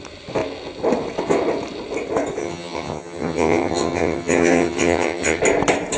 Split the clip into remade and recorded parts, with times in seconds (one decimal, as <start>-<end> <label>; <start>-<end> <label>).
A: 0.0-2.4 recorded; 2.4-5.4 remade; 5.4-6.0 recorded

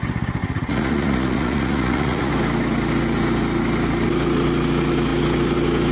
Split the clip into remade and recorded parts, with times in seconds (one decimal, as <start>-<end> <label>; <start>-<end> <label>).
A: 0.0-0.4 recorded; 0.4-2.3 remade; 2.3-5.9 recorded